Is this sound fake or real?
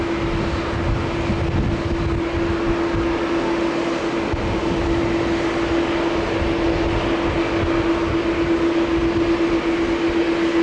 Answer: real